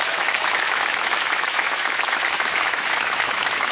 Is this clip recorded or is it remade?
remade